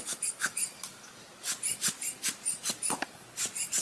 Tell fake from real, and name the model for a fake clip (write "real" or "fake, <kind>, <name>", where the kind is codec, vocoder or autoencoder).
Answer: real